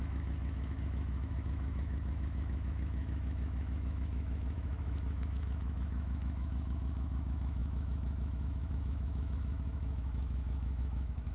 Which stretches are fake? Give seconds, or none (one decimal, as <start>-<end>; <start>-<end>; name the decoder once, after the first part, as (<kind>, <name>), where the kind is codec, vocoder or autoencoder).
0.0-11.3 (autoencoder, DAC-VAE)